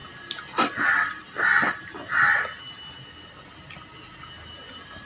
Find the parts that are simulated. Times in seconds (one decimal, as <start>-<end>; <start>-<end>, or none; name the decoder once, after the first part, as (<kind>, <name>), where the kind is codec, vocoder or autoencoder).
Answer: none